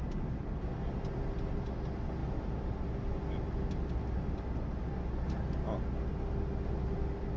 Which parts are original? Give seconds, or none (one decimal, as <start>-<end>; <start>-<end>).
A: 0.0-7.4